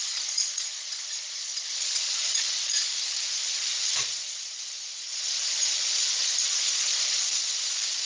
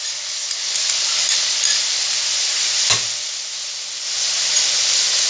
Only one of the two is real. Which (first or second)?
second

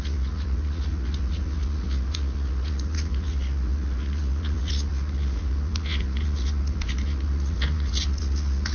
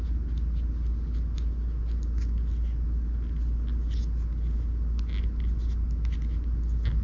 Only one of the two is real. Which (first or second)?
second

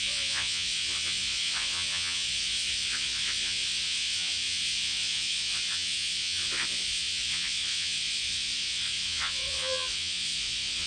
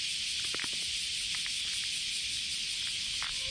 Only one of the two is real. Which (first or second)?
second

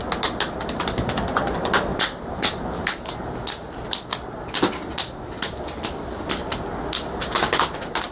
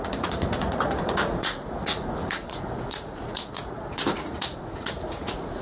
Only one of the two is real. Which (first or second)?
first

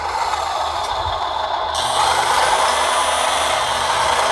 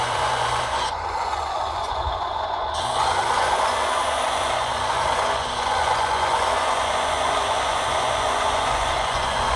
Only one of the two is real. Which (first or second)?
first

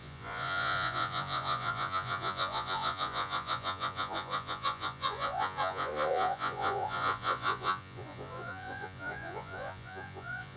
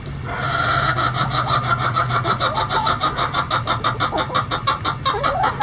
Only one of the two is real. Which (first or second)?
second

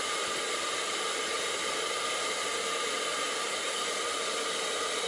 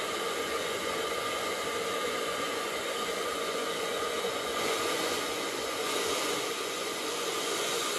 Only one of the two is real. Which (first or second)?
first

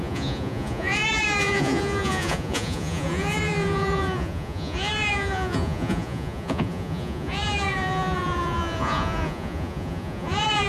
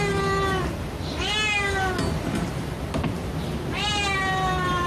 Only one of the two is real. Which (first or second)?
second